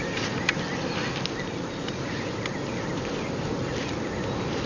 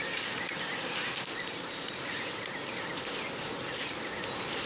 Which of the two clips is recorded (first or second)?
first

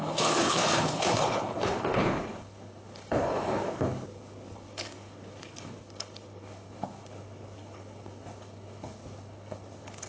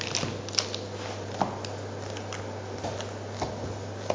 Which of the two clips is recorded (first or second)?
second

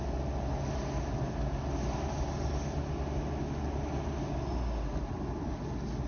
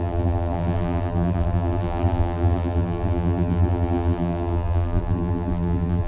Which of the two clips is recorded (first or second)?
first